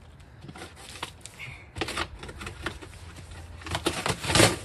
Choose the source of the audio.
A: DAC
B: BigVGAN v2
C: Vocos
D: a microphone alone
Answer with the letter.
D